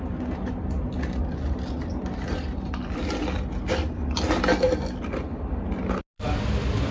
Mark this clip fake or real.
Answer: real